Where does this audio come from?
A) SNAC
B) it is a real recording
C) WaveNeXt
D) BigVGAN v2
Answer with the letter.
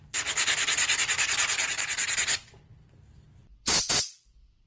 B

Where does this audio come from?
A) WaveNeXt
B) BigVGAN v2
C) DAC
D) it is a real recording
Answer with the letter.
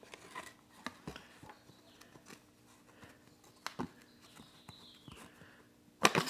D